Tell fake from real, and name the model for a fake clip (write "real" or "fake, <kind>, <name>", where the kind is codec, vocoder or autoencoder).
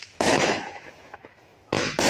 fake, autoencoder, DAC-VAE